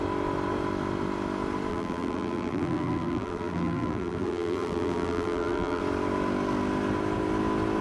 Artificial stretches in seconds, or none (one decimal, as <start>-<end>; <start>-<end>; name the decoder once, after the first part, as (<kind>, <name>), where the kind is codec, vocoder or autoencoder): 1.7-5.8 (vocoder, BigVGAN v2)